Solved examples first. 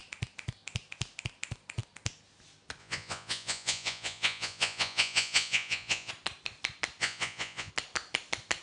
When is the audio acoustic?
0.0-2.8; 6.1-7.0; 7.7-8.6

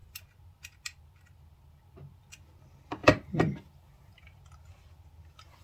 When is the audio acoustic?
0.0-3.0; 3.8-5.6

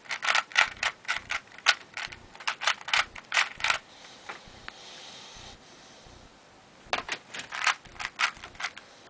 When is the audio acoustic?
0.0-0.5; 4.6-9.1

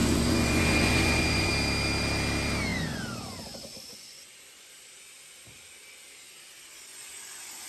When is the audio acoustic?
1.5-2.7; 4.7-6.9

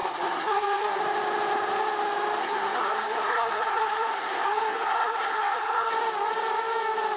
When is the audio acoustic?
1.0-2.4; 5.9-7.2

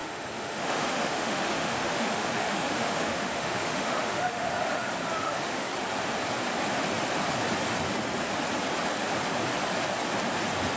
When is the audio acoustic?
4.5-5.2; 5.7-10.8

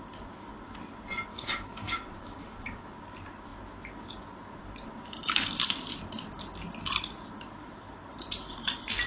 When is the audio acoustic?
0.0-1.3; 2.9-9.1